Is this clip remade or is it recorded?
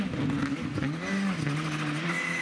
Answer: recorded